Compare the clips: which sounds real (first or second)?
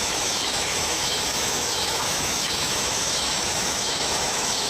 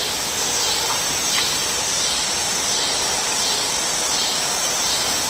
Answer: second